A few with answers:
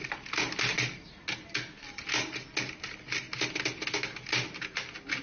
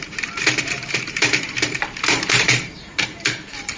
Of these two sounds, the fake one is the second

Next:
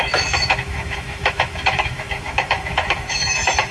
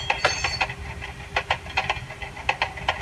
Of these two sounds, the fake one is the first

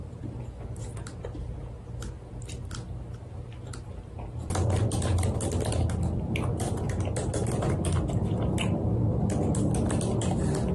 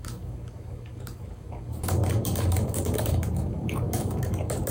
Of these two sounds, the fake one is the second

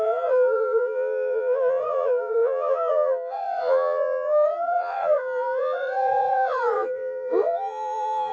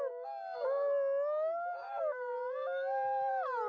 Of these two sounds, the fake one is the first